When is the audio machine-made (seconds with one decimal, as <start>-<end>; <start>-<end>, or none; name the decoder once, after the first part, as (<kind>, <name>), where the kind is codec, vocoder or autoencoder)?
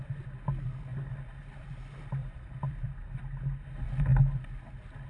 2.2-3.4 (vocoder, BigVGAN v2)